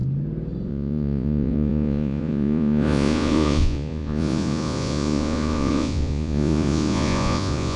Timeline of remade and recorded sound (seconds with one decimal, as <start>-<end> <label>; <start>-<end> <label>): 0.0-0.7 recorded; 0.7-7.8 remade